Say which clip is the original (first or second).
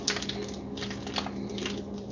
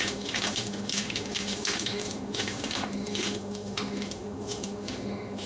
first